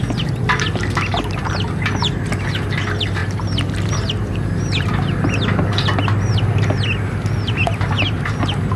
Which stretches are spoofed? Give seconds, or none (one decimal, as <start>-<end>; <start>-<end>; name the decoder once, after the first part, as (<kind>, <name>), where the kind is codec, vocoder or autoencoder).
none